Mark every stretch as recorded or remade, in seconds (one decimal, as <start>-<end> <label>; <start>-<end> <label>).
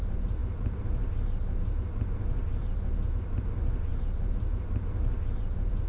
0.0-2.6 remade; 2.6-3.1 recorded; 3.1-5.9 remade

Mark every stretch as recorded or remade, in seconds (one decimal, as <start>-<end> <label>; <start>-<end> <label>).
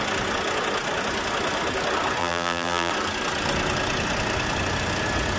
0.0-2.2 recorded; 2.2-2.9 remade; 2.9-5.4 recorded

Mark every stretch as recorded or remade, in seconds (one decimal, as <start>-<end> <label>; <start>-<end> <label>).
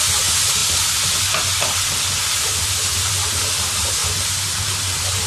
0.0-4.0 recorded; 4.0-5.3 remade